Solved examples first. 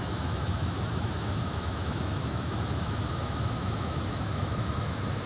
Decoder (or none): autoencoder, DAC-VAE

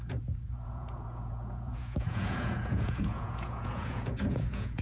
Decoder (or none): vocoder, Vocos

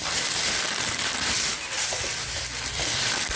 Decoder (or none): vocoder, BigVGAN v2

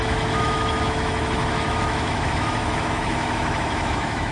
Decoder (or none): autoencoder, DAC-VAE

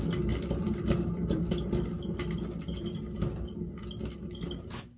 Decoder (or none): none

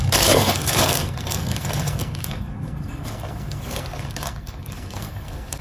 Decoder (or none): codec, SNAC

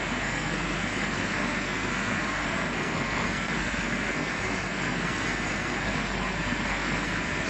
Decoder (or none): codec, SNAC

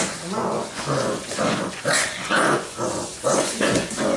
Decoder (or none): vocoder, Vocos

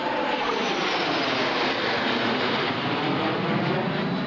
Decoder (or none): none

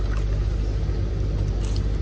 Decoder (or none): none